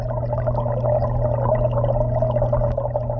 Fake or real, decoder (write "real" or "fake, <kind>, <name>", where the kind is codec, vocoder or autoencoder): real